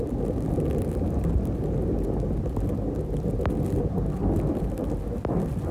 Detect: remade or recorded recorded